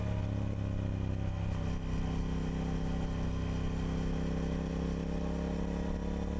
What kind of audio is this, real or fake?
real